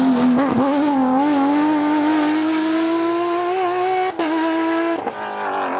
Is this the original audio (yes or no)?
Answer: yes